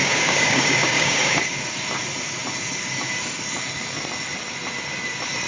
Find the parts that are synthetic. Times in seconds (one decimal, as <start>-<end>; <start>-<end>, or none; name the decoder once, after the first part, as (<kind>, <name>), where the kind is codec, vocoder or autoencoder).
0.0-1.6 (codec, DAC)